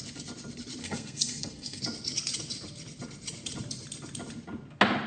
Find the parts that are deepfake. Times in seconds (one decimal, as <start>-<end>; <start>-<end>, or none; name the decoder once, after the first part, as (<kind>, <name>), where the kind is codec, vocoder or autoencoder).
0.8-1.8 (codec, SNAC)